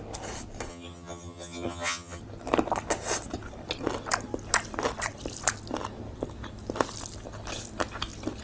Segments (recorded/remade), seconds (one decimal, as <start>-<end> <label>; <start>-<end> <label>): 0.0-0.7 recorded; 0.7-2.2 remade; 2.2-8.4 recorded